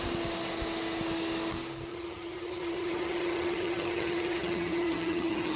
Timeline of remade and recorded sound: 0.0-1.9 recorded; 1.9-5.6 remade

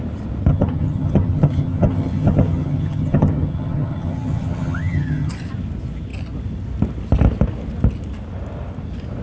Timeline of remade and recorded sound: 0.0-0.5 recorded; 0.5-5.3 remade; 5.3-9.2 recorded

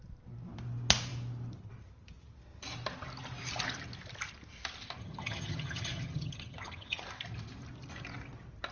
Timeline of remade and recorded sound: 0.0-5.0 recorded; 5.0-7.0 remade; 7.0-8.7 recorded

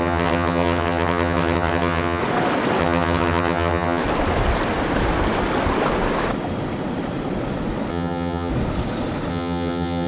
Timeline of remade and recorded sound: 0.0-2.2 remade; 2.2-2.8 recorded; 2.8-4.0 remade; 4.0-7.9 recorded; 7.9-8.5 remade; 8.5-9.3 recorded; 9.3-10.1 remade

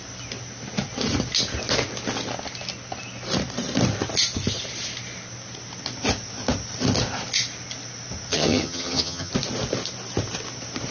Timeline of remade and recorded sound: 0.0-8.3 recorded; 8.3-9.3 remade; 9.3-10.9 recorded

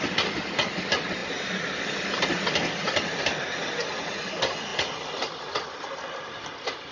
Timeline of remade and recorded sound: 0.0-6.9 recorded

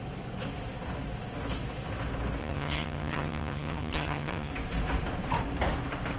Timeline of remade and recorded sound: 0.0-2.4 recorded; 2.4-4.5 remade; 4.5-6.2 recorded

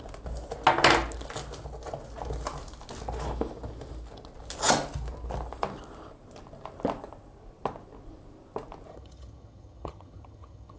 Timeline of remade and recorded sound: 0.0-8.9 recorded; 8.9-10.8 remade